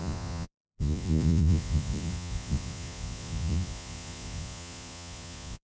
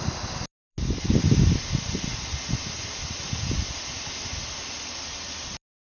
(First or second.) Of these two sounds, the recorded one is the second